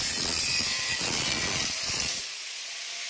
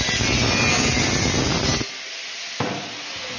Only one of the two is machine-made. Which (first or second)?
first